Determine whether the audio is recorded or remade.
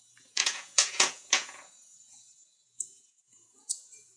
remade